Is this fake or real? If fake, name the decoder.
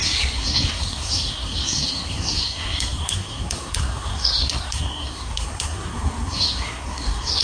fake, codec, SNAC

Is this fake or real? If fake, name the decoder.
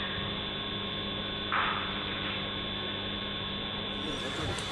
fake, vocoder, BigVGAN v2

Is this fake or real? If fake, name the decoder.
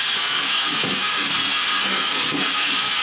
fake, codec, SNAC